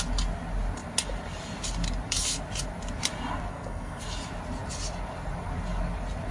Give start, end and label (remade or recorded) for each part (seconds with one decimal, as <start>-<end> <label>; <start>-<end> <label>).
0.0-3.5 recorded; 3.5-4.0 remade; 4.0-6.3 recorded